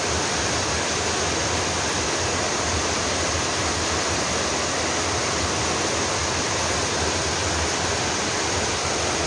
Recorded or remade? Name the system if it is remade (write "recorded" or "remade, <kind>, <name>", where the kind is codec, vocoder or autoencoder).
recorded